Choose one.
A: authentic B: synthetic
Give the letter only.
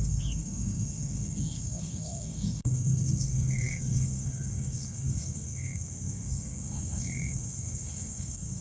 B